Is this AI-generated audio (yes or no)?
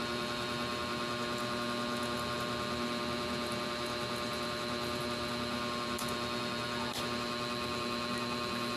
no